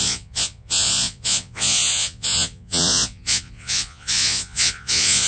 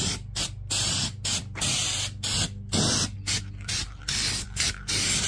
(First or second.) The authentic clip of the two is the second